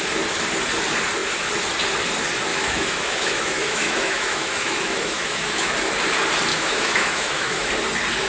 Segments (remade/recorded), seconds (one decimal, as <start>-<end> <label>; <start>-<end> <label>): 0.0-2.5 recorded; 2.5-5.7 remade; 5.7-6.5 recorded; 6.5-7.7 remade; 7.7-8.3 recorded